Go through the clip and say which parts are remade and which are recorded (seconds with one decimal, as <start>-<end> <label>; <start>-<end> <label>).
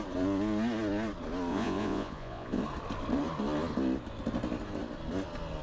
0.0-1.5 recorded; 1.5-2.6 remade; 2.6-5.6 recorded